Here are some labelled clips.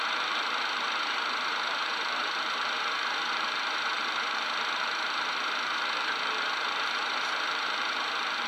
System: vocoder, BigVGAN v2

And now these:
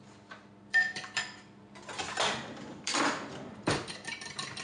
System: vocoder, BigVGAN v2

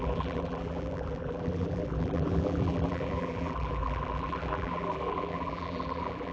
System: vocoder, BigVGAN v2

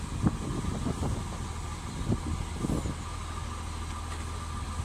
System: none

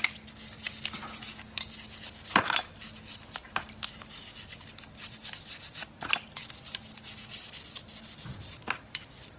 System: none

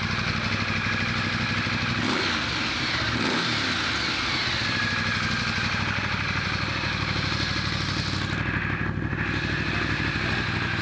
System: none